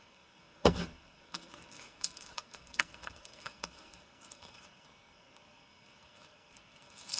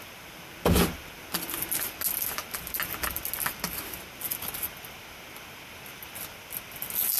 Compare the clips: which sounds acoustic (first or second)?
second